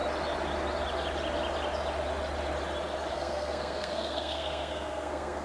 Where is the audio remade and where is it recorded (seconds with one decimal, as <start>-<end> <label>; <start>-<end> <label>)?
0.0-3.1 recorded; 3.1-5.4 remade